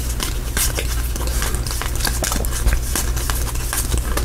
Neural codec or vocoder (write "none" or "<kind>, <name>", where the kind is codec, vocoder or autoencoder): none